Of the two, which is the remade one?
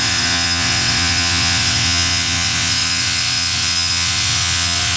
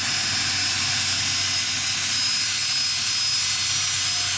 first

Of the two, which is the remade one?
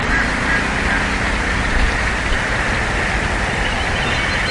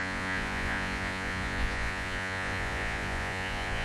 second